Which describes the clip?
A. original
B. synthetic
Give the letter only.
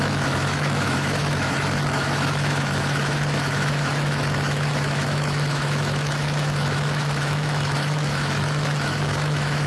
B